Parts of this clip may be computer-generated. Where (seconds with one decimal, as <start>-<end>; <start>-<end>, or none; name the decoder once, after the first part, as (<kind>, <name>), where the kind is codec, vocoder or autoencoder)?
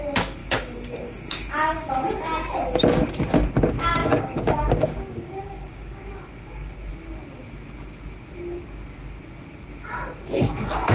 0.4-1.9 (codec, DAC); 4.0-6.9